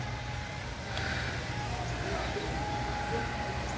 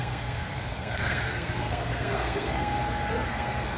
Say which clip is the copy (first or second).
second